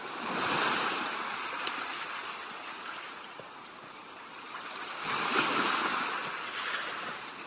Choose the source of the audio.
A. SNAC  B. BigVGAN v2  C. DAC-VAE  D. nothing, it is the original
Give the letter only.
D